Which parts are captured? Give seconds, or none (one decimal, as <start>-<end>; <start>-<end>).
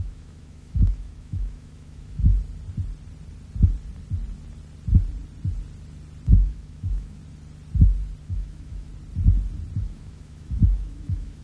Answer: 2.3-6.3; 7.2-8.2; 8.9-9.8